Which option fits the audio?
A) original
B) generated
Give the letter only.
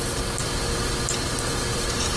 A